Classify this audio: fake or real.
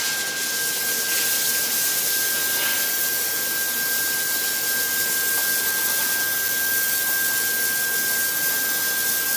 real